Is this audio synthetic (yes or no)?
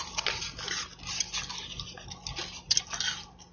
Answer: no